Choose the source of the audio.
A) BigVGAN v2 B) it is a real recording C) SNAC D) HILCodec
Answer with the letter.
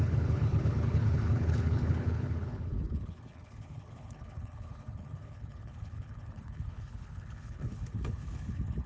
D